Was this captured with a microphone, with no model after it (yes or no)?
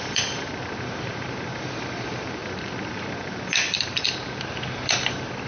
no